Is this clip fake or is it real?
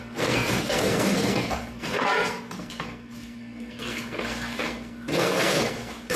fake